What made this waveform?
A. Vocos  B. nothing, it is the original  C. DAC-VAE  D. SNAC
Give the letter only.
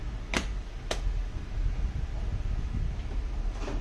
B